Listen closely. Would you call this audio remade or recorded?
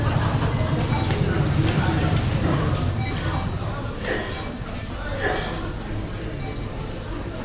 recorded